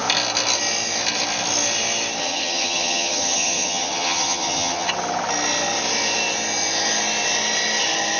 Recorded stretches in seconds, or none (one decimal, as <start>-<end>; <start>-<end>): 0.0-2.2; 4.9-8.2